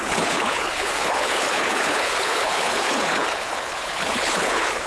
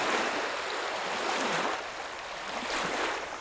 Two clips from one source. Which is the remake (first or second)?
first